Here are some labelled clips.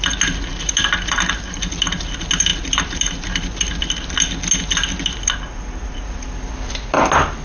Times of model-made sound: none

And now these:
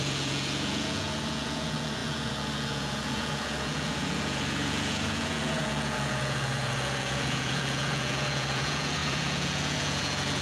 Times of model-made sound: 0.0-10.4 (vocoder, Vocos)